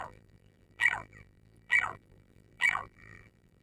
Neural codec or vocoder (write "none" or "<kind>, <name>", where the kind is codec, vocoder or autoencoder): vocoder, BigVGAN v2